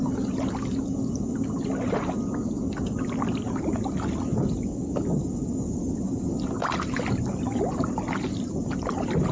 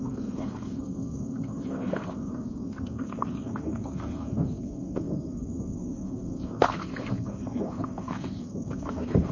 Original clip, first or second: first